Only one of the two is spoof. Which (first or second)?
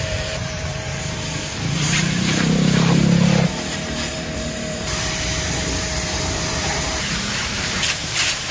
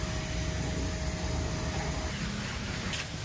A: first